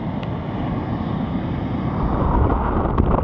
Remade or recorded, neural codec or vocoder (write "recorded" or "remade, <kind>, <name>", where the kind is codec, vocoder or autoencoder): recorded